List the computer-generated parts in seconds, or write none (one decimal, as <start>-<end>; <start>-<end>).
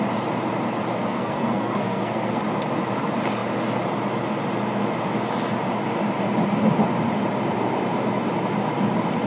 1.0-2.4